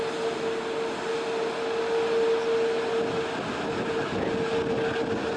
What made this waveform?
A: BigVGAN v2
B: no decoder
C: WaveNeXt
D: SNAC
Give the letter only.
B